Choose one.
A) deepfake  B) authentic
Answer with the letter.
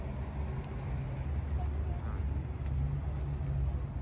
B